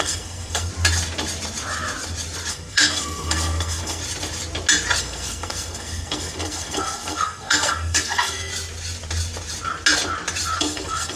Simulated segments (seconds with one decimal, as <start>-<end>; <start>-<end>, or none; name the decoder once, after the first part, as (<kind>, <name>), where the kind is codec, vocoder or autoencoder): 0.0-0.7 (codec, SNAC); 2.5-4.0; 5.0-8.5; 10.6-11.2